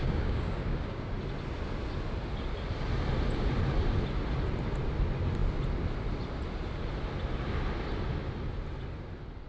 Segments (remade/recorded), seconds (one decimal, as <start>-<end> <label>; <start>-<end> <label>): 0.0-1.1 remade; 1.1-9.5 recorded